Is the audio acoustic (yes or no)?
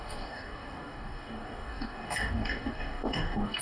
no